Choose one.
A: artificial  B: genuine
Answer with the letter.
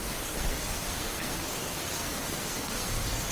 A